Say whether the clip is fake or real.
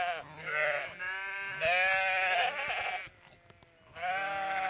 real